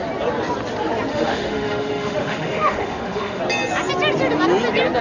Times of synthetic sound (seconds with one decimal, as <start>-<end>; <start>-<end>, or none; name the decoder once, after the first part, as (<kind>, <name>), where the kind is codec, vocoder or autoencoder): 1.1-3.4 (autoencoder, DAC-VAE)